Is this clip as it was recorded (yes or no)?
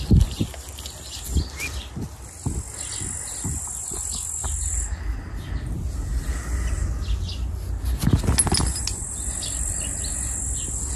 yes